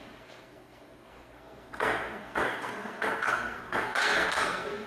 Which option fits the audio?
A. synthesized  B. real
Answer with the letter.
A